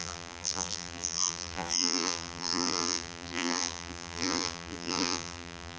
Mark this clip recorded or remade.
remade